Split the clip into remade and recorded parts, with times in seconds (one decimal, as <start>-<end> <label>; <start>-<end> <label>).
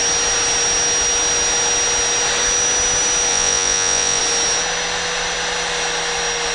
0.0-3.3 recorded; 3.3-4.2 remade; 4.2-6.5 recorded